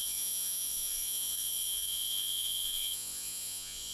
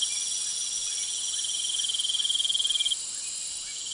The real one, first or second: second